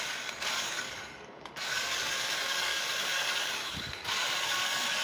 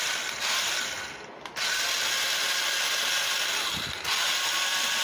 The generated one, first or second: first